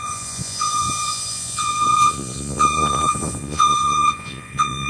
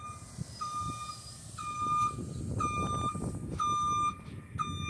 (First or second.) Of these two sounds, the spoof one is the first